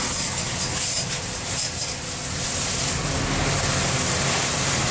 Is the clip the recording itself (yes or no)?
yes